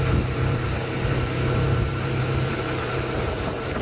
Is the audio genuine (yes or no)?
no